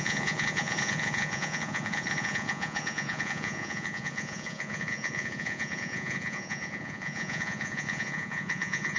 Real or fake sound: fake